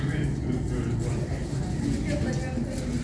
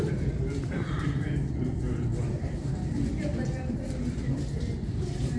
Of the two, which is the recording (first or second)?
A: first